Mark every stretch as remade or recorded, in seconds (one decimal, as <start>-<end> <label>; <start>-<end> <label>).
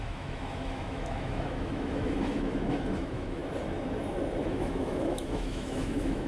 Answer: 0.0-3.4 remade; 3.4-4.4 recorded; 4.4-6.3 remade